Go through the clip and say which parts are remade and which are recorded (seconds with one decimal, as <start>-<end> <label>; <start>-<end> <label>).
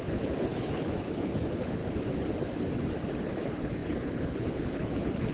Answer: 0.0-1.8 remade; 1.8-3.2 recorded; 3.2-5.3 remade